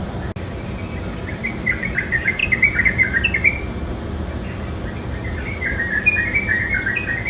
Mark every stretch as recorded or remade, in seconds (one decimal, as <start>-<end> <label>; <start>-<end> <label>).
0.0-7.3 recorded